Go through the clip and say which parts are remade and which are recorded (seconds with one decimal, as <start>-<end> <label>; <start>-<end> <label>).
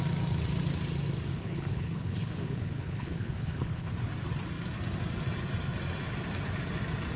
0.0-1.3 recorded; 1.3-3.9 remade; 3.9-7.2 recorded